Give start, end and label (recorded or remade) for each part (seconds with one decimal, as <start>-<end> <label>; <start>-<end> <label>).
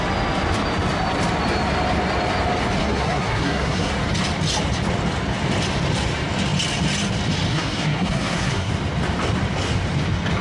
0.0-2.8 recorded; 2.8-3.9 remade; 3.9-7.5 recorded; 7.5-8.7 remade; 8.7-10.4 recorded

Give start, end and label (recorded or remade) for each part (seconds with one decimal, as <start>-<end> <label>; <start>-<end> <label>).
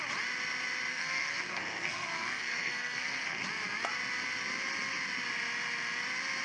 0.0-0.9 recorded; 0.9-3.4 remade; 3.4-6.4 recorded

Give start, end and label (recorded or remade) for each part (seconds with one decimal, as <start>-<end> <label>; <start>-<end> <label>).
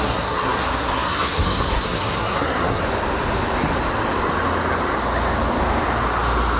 0.0-2.8 remade; 2.8-6.6 recorded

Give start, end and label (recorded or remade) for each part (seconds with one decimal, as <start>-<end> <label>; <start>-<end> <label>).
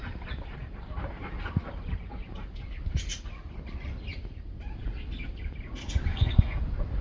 0.0-6.1 recorded; 6.1-6.6 remade; 6.6-7.0 recorded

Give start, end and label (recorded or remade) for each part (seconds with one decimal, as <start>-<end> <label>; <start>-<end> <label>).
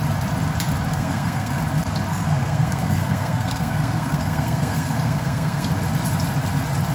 0.0-0.9 recorded; 0.9-1.6 remade; 1.6-2.1 recorded; 2.1-5.7 remade; 5.7-6.9 recorded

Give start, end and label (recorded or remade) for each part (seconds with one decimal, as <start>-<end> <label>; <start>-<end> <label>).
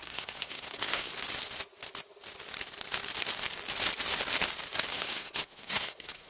0.0-1.1 remade; 1.1-4.9 recorded; 4.9-6.3 remade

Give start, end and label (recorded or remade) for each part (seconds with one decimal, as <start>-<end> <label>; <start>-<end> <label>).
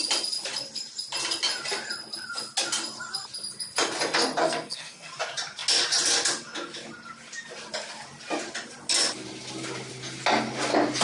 0.0-4.4 recorded; 4.4-5.1 remade; 5.1-11.0 recorded